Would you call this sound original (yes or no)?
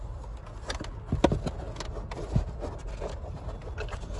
yes